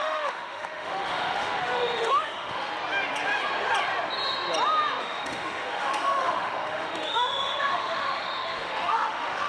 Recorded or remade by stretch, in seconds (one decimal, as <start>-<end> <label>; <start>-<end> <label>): 0.0-2.7 remade; 2.7-5.0 recorded; 5.0-9.5 remade

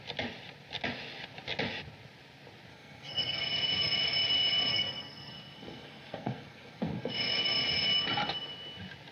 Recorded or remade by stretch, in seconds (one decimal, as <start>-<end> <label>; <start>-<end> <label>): 0.0-2.7 recorded; 2.7-3.4 remade; 3.4-4.7 recorded; 4.7-7.1 remade; 7.1-9.1 recorded

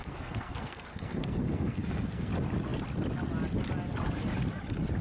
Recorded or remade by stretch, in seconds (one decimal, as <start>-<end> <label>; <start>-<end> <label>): 0.0-2.3 remade; 2.3-5.0 recorded

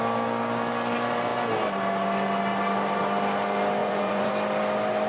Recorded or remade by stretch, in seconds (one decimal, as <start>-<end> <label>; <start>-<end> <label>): 0.0-3.8 recorded; 3.8-4.3 remade; 4.3-5.1 recorded

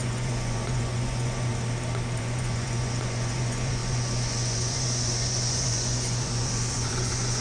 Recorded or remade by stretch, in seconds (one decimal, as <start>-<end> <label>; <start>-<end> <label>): 0.0-1.5 remade; 1.5-2.2 recorded; 2.2-7.4 remade

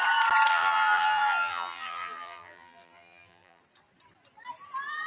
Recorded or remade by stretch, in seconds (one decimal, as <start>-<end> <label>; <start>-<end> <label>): 0.0-0.5 recorded; 0.5-3.6 remade; 3.6-5.1 recorded

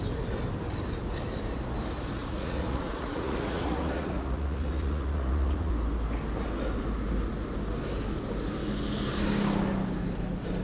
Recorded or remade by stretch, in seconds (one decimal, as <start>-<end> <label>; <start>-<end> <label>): 0.0-2.2 recorded; 2.2-5.7 remade; 5.7-10.6 recorded